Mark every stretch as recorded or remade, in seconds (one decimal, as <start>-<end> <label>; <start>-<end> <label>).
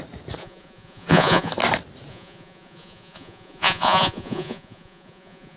0.0-0.4 recorded; 0.4-1.5 remade; 1.5-2.1 recorded; 2.1-5.6 remade